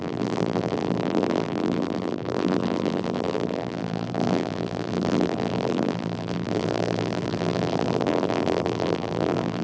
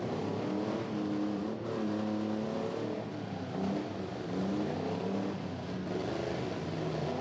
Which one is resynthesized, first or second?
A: first